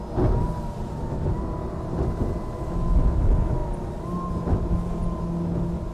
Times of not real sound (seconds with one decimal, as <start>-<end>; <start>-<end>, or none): none